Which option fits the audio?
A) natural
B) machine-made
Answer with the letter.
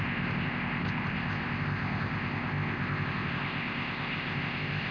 B